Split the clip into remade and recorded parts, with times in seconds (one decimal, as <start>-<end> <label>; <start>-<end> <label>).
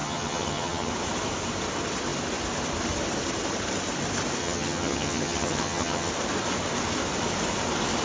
0.0-0.9 remade; 0.9-4.4 recorded; 4.4-6.1 remade; 6.1-8.0 recorded